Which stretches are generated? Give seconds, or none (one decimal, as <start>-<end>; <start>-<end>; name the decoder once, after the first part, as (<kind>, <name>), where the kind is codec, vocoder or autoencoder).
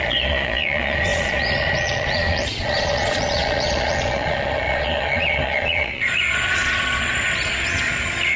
0.0-8.4 (vocoder, Vocos)